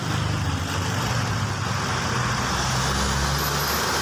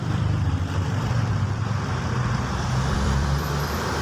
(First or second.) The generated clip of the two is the second